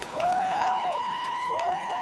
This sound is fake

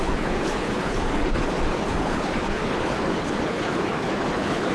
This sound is fake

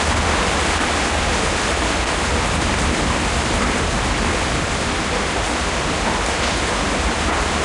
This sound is real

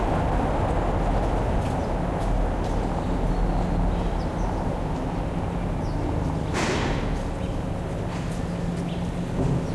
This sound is real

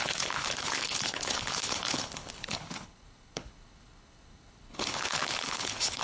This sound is fake